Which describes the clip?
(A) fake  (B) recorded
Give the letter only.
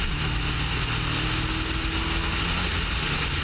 B